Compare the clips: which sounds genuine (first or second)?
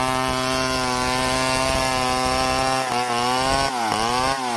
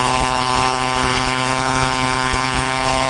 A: first